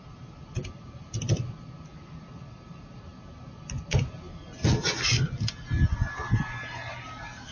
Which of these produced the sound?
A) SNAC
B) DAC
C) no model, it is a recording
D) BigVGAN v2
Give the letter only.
C